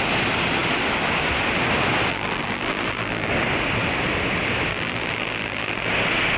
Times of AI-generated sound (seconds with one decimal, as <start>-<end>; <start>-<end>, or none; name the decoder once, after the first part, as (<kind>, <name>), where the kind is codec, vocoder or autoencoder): 2.1-3.3 (vocoder, BigVGAN v2); 4.7-5.9